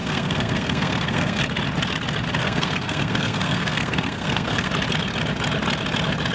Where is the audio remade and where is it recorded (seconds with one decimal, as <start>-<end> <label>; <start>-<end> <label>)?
0.0-1.4 remade; 1.4-2.4 recorded; 2.4-4.7 remade; 4.7-6.3 recorded